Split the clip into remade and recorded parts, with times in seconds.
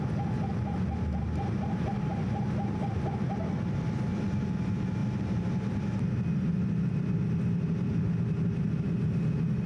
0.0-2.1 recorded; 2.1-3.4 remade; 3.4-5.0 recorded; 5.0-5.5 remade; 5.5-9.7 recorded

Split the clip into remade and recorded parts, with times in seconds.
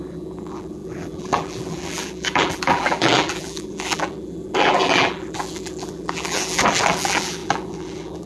0.0-8.3 remade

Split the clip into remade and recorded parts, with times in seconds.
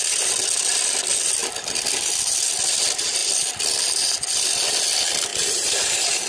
0.0-5.3 recorded; 5.3-6.3 remade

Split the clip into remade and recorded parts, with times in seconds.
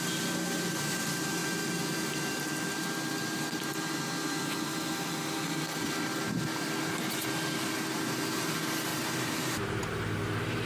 0.0-8.9 recorded; 8.9-9.8 remade; 9.8-10.7 recorded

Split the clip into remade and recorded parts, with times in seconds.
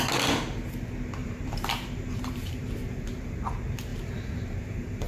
0.0-1.2 recorded; 1.2-3.3 remade; 3.3-3.9 recorded; 3.9-5.1 remade